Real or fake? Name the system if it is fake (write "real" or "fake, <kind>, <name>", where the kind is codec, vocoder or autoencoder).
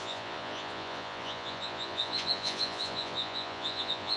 fake, vocoder, Vocos